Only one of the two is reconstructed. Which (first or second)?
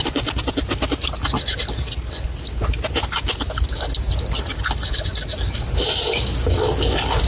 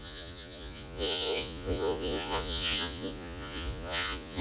second